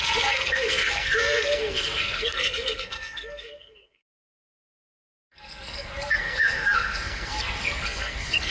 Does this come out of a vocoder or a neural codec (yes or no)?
yes